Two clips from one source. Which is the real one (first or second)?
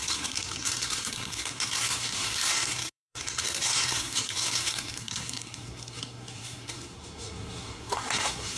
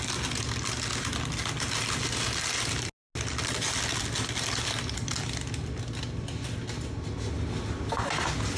second